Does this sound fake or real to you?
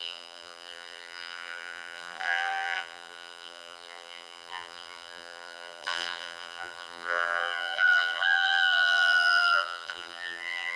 fake